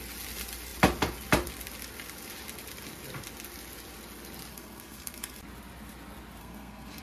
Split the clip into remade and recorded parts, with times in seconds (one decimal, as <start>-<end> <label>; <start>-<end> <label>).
0.0-4.5 recorded; 4.5-5.4 remade; 5.4-6.4 recorded; 6.4-7.0 remade